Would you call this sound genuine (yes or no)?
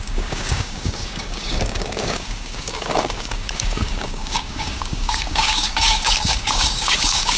no